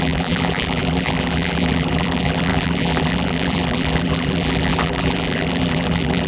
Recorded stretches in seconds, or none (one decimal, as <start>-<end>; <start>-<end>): none